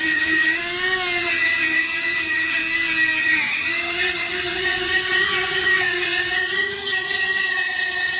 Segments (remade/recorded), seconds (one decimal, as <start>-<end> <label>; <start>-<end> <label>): 0.0-0.6 remade; 0.6-1.2 recorded; 1.2-2.6 remade; 2.6-3.2 recorded; 3.2-8.2 remade